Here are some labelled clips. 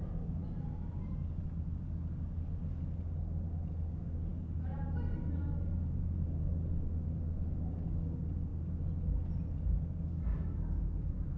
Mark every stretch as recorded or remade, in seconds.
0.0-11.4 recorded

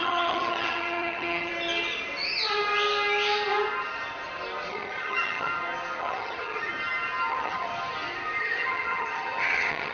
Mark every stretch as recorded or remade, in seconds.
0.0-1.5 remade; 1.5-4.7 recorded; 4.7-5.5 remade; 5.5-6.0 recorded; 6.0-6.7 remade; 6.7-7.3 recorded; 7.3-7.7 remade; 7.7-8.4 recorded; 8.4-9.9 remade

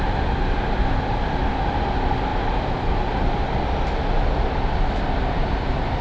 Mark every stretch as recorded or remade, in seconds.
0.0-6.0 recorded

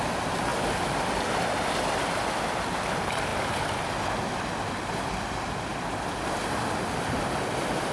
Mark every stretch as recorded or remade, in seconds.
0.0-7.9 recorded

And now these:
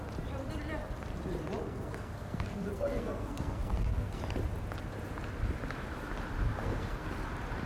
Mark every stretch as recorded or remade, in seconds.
0.0-1.6 recorded; 1.6-4.2 remade; 4.2-6.6 recorded; 6.6-7.1 remade; 7.1-7.7 recorded